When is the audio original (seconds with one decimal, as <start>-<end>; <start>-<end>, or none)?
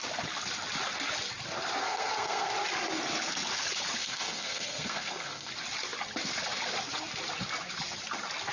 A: 0.0-1.8; 2.5-4.0; 5.5-8.5